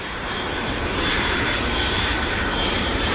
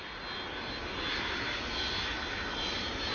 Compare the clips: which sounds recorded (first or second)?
second